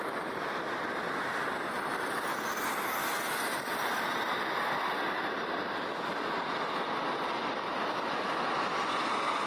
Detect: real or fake real